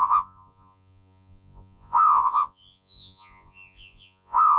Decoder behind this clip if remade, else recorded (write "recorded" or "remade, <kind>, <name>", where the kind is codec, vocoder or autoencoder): remade, vocoder, Vocos